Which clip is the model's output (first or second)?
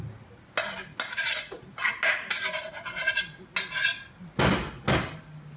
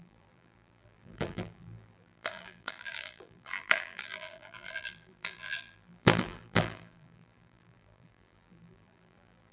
second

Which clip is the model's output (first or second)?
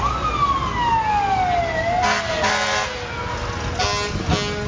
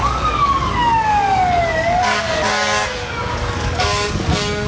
second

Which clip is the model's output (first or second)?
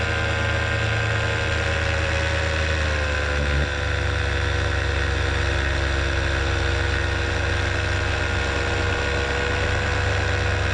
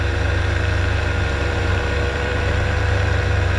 second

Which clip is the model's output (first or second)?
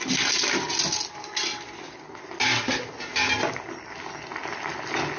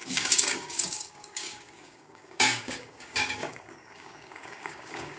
second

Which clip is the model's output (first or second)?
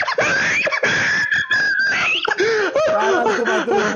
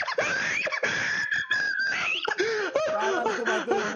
second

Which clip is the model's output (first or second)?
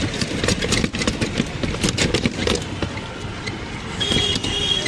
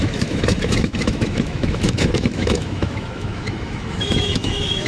second